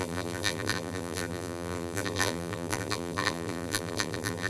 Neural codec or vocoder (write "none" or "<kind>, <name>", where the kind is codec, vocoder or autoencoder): vocoder, BigVGAN v2